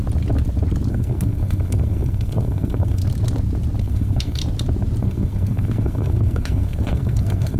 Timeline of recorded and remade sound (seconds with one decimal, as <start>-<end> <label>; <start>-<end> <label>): 0.0-0.9 recorded; 0.9-3.0 remade; 3.0-3.8 recorded; 3.8-4.4 remade; 4.4-5.0 recorded; 5.0-7.6 remade

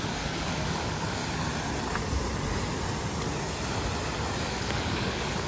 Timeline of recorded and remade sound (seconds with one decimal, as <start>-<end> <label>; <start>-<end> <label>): 0.0-1.2 remade; 1.2-4.5 recorded; 4.5-5.5 remade